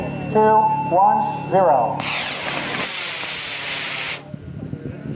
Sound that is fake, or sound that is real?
real